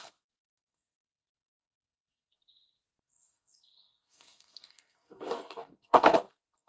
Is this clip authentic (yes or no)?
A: no